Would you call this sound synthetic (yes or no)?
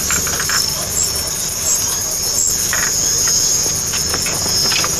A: no